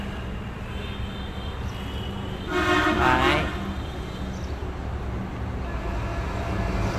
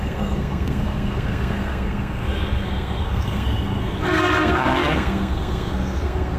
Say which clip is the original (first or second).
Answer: first